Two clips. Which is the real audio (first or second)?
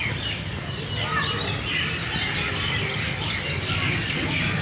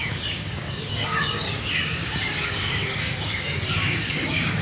first